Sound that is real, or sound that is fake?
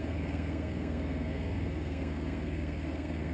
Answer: fake